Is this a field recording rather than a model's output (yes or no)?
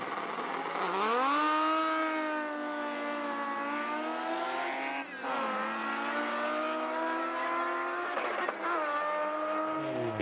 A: yes